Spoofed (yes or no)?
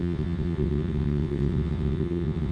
yes